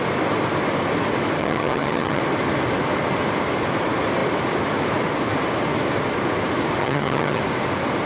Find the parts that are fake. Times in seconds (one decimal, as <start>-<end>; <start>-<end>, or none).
1.4-2.2; 6.8-7.4